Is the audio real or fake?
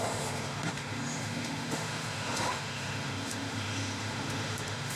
fake